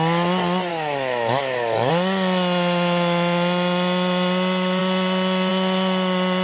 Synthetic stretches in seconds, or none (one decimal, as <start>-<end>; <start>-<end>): 0.7-1.9